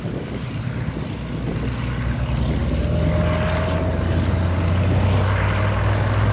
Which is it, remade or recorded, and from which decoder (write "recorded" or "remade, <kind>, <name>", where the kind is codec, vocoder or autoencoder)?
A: recorded